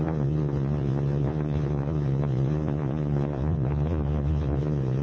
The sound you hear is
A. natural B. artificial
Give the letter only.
B